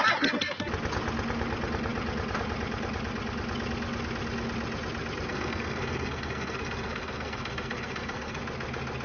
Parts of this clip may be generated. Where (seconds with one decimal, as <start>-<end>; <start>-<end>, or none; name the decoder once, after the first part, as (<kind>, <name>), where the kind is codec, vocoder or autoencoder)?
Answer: 5.3-8.4 (codec, SNAC)